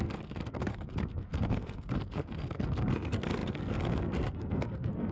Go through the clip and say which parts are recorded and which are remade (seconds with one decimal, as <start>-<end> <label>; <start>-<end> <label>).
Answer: 0.0-5.1 remade